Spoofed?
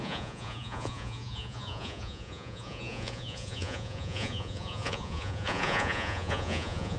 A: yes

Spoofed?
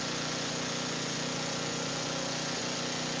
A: yes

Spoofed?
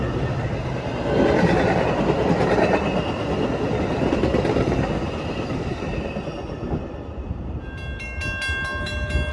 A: no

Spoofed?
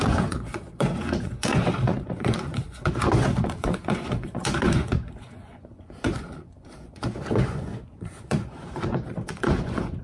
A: yes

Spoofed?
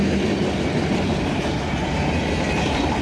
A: no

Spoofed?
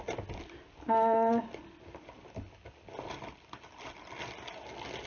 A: no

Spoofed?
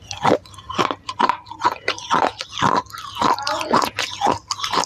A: no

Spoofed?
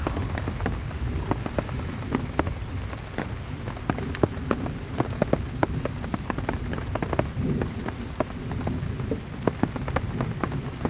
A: no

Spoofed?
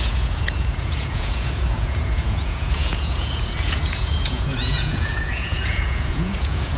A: yes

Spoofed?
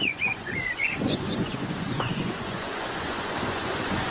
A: yes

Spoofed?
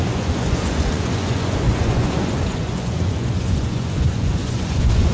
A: yes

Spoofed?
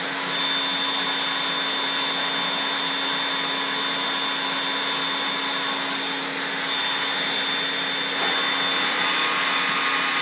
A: no